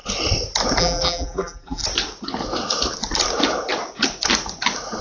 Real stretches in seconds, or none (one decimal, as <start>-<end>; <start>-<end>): 0.0-0.8; 1.8-5.0